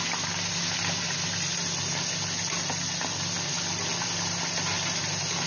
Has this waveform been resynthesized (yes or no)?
no